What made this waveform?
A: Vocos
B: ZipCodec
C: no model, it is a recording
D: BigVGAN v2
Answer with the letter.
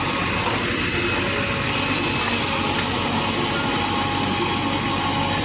C